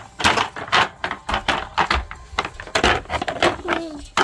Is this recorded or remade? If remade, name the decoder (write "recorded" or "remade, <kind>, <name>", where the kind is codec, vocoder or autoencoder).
recorded